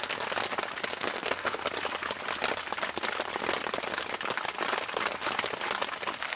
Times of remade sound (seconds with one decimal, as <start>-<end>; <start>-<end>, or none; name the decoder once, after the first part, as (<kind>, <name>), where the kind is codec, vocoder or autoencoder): 0.9-1.6 (codec, SNAC)